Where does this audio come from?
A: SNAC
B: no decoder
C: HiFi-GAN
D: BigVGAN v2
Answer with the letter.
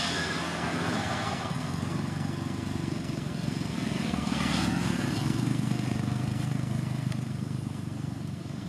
A